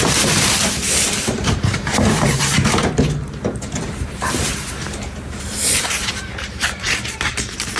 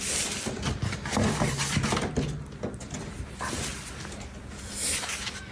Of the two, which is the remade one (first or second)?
first